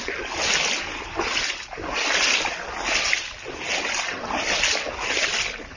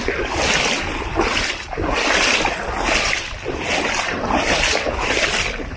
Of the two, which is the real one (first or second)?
first